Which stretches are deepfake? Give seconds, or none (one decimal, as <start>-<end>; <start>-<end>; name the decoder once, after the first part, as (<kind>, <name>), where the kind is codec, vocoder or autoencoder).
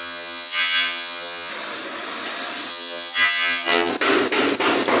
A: 0.0-1.5 (vocoder, HiFi-GAN); 2.7-3.9